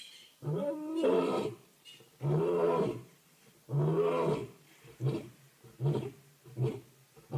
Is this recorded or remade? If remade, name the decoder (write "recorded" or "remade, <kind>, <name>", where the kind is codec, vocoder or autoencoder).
recorded